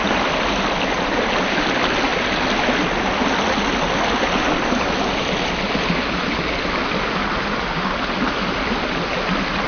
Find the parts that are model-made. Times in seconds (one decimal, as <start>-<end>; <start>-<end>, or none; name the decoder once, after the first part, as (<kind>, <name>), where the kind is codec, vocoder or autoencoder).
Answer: none